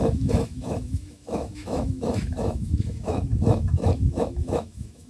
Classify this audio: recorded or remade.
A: remade